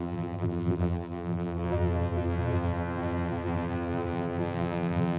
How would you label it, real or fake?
fake